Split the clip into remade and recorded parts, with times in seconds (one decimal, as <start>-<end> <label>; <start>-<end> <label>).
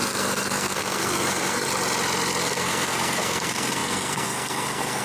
0.0-1.7 remade; 1.7-2.4 recorded; 2.4-5.0 remade